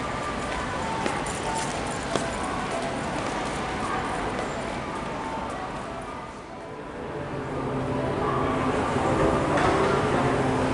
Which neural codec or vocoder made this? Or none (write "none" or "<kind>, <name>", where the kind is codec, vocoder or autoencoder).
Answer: none